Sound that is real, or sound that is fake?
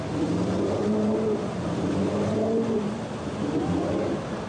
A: real